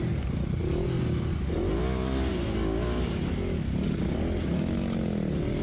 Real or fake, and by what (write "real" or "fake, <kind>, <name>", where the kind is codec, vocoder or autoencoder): real